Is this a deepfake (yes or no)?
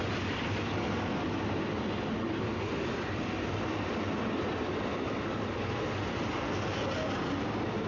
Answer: no